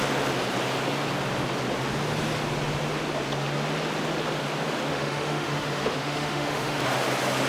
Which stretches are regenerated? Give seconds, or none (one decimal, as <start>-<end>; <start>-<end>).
4.9-6.8